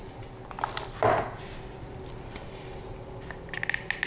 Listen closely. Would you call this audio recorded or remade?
recorded